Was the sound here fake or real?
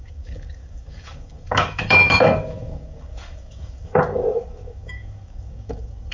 fake